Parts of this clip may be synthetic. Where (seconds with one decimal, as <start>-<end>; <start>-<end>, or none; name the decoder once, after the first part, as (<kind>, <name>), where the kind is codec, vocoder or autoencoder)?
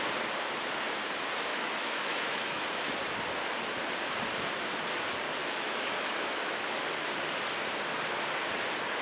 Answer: 1.5-2.9 (autoencoder, DAC-VAE); 5.4-6.5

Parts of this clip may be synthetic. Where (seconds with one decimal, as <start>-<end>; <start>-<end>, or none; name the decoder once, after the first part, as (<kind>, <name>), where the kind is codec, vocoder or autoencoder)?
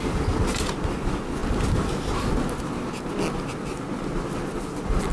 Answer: none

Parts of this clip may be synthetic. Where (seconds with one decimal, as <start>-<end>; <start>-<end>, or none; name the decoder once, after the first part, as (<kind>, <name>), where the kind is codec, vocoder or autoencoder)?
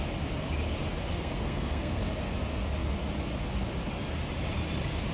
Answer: 1.1-2.0 (codec, SNAC)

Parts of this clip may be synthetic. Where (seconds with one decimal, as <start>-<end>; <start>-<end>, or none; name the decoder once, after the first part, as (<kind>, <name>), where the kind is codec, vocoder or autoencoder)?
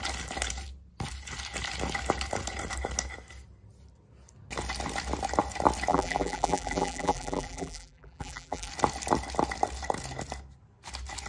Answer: 5.9-8.7 (vocoder, BigVGAN v2)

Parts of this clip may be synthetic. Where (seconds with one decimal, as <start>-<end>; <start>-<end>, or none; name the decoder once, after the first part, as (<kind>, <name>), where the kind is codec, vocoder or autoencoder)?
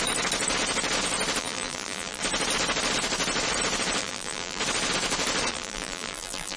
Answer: 1.4-2.2 (vocoder, BigVGAN v2); 4.0-4.6; 5.5-6.6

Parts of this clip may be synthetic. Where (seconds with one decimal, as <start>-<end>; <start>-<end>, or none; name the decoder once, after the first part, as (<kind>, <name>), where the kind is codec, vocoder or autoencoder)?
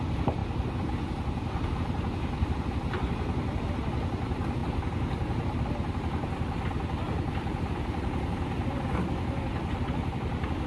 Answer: none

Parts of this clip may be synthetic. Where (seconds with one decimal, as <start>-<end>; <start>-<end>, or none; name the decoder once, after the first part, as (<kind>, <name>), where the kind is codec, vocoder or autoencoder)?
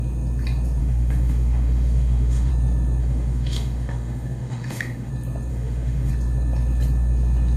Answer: 0.8-2.5 (autoencoder, DAC-VAE); 3.0-5.1; 5.5-6.1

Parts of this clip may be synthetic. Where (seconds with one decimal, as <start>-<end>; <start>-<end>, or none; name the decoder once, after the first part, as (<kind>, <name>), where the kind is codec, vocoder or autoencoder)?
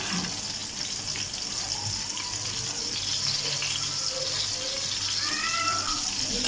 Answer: none